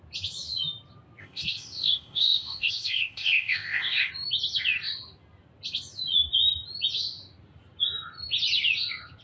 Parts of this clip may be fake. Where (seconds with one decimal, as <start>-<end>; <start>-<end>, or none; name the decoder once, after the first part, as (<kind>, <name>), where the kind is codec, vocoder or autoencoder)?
1.2-4.1 (codec, ZipCodec)